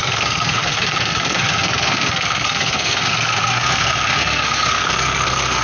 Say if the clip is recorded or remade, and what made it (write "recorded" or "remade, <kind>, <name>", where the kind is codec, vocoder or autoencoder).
remade, codec, SNAC